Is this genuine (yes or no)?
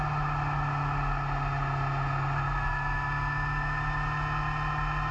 yes